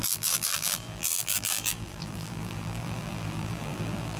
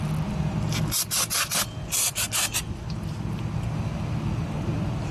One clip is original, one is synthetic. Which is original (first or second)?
second